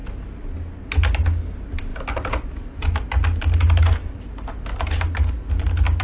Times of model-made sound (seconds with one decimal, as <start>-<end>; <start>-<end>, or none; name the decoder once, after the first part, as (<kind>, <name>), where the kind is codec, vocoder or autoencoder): none